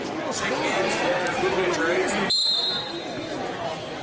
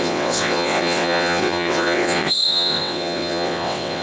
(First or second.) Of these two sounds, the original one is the first